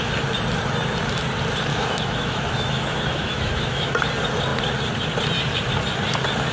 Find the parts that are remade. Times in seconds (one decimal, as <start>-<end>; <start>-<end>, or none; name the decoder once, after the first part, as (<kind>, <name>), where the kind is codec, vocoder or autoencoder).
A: 1.7-3.9 (autoencoder, DAC-VAE)